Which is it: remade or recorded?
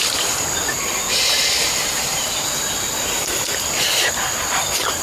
recorded